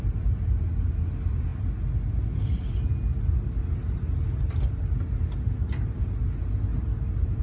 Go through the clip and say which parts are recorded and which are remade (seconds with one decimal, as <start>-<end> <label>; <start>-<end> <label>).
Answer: 0.0-7.4 recorded